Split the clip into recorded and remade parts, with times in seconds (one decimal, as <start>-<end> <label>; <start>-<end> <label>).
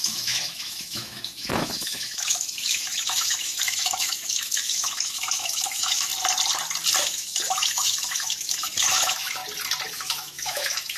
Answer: 0.0-6.1 remade; 6.1-7.0 recorded; 7.0-9.4 remade; 9.4-9.9 recorded; 9.9-11.0 remade